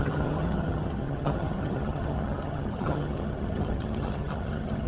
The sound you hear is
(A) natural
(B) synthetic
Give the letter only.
B